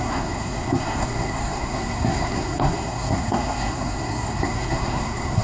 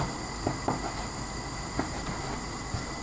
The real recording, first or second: second